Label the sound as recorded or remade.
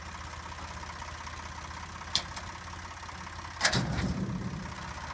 recorded